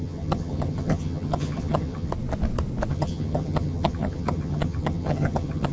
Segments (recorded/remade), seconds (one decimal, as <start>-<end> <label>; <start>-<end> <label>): 0.0-2.1 remade; 2.1-2.9 recorded; 2.9-5.7 remade